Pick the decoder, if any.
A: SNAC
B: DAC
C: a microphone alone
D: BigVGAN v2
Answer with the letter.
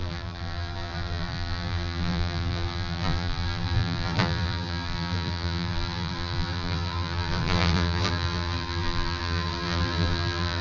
D